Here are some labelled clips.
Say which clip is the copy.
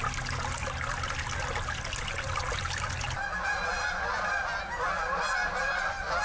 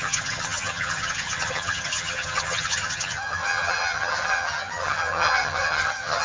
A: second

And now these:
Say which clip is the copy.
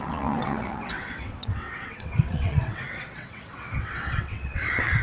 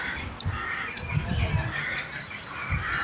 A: first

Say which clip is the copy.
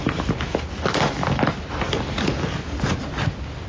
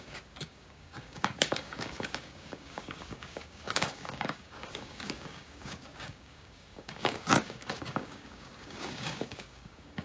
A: second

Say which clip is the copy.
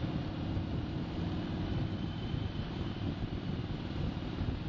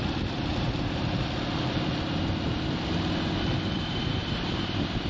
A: first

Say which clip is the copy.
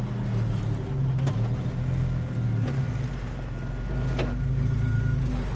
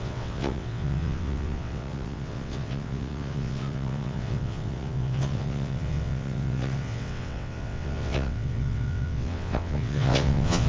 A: second